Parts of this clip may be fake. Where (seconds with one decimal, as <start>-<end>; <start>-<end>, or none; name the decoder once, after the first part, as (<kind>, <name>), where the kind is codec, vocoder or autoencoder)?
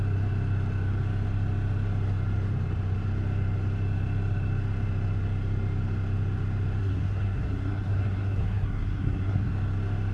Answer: 6.8-9.5 (codec, SNAC)